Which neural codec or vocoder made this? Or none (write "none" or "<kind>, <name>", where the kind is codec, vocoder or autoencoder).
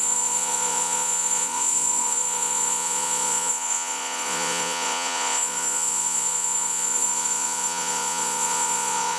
vocoder, Vocos